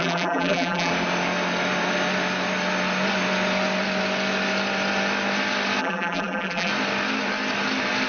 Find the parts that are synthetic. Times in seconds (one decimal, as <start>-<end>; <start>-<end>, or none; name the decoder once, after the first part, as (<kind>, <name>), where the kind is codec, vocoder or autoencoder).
0.0-0.9 (vocoder, BigVGAN v2); 5.8-6.7